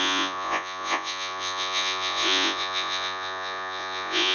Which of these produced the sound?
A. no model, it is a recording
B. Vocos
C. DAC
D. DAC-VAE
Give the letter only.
B